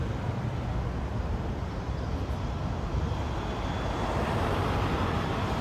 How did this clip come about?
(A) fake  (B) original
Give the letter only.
B